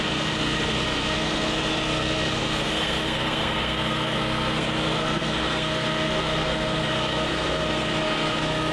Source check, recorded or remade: remade